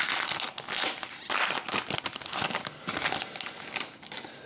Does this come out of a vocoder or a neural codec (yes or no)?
no